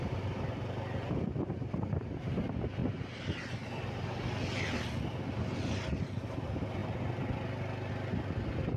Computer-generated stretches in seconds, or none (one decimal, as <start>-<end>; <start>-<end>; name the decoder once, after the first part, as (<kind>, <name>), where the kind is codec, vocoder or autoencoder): none